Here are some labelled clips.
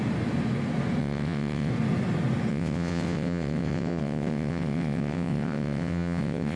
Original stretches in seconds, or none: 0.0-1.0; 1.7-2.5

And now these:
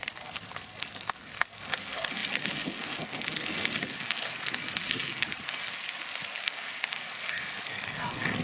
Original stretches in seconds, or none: 5.7-6.4

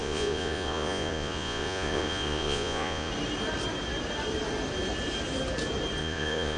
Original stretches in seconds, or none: 3.1-6.0

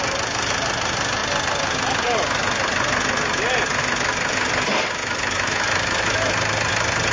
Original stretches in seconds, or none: 0.0-5.0; 6.4-7.1

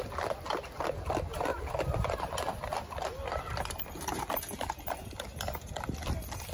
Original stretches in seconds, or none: 0.0-1.5; 2.3-6.5

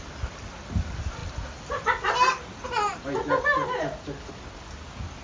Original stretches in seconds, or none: 0.0-5.2

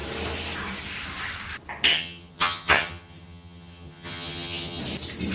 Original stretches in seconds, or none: 0.0-1.9; 4.8-5.3

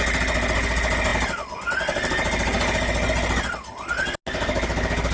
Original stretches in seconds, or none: 0.0-5.1